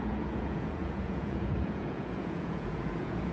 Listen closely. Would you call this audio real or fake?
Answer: fake